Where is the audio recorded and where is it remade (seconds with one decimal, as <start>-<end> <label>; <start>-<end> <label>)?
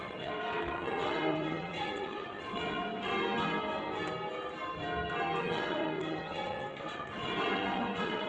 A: 0.0-3.1 remade; 3.1-5.4 recorded; 5.4-8.3 remade